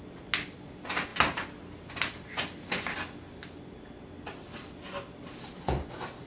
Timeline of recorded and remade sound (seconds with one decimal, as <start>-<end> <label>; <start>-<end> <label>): 0.0-6.3 recorded